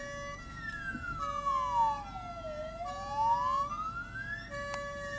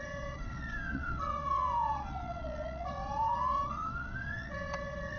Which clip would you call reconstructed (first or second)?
second